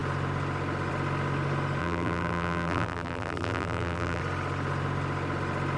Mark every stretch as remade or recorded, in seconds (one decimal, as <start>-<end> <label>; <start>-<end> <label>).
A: 0.0-1.8 recorded; 1.8-4.2 remade; 4.2-5.8 recorded